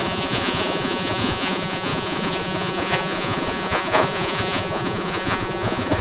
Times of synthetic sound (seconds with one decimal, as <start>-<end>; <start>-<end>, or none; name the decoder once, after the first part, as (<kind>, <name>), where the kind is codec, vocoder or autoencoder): 0.0-6.0 (vocoder, Vocos)